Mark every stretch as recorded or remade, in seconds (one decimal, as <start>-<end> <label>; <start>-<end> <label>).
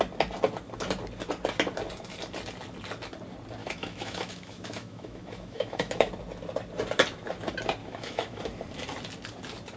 0.0-3.6 recorded; 3.6-6.1 remade; 6.1-7.8 recorded; 7.8-8.4 remade; 8.4-9.8 recorded